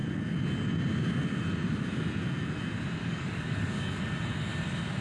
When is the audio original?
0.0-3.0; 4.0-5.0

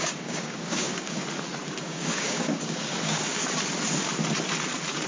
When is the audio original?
1.2-1.8; 3.4-5.1

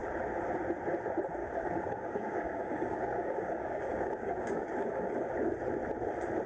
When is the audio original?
0.0-1.4; 5.3-6.5

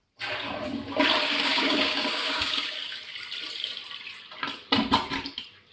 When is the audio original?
0.0-1.2; 3.0-5.7

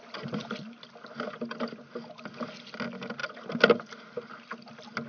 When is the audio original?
0.0-5.1

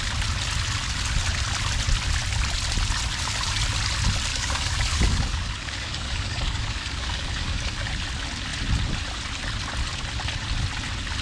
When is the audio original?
0.0-4.3; 7.9-11.2

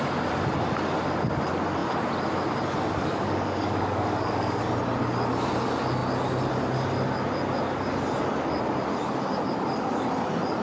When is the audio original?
0.0-3.0; 4.6-10.6